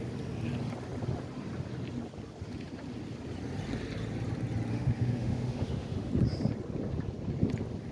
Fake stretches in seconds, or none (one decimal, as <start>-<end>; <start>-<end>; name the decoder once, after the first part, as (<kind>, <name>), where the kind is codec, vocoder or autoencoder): 4.7-6.1 (autoencoder, DAC-VAE)